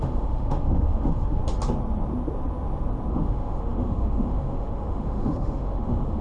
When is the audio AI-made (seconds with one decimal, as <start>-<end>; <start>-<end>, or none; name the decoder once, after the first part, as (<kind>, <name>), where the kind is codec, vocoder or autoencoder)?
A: 0.0-1.4 (autoencoder, DAC-VAE); 3.1-6.2